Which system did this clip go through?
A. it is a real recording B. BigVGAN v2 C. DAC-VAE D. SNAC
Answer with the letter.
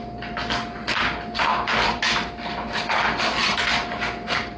A